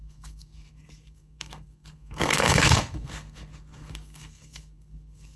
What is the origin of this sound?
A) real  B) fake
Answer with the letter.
B